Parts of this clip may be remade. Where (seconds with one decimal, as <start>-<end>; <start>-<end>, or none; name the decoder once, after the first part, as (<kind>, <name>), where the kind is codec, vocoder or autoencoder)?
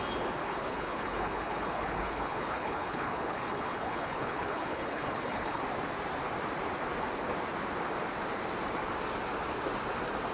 0.4-5.6 (codec, HILCodec)